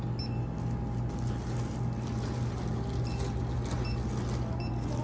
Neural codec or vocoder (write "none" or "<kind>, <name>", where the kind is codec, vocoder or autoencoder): none